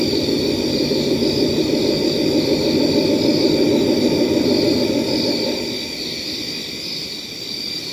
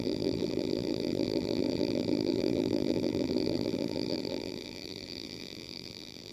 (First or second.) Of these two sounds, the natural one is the first